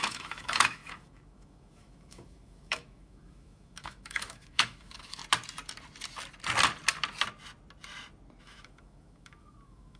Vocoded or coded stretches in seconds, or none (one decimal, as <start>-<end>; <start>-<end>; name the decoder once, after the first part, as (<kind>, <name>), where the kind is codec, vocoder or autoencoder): 0.0-5.2 (autoencoder, DAC-VAE); 8.4-10.0